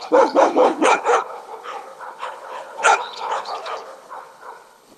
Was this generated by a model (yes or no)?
yes